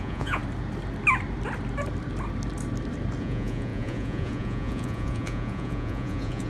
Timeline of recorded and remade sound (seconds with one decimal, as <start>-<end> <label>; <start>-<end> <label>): 0.0-0.4 remade; 0.4-3.2 recorded; 3.2-6.5 remade